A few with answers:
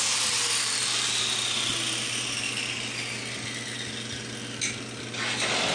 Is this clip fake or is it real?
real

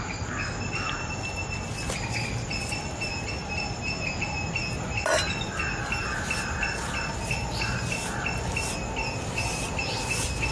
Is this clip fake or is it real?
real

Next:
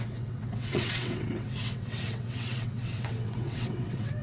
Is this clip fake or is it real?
fake